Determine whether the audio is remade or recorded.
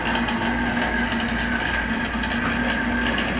recorded